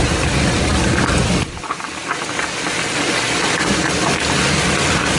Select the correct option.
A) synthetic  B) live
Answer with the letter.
B